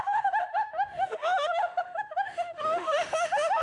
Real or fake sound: fake